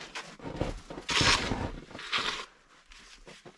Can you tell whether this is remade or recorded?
recorded